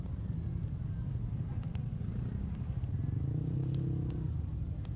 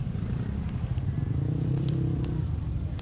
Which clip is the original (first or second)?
first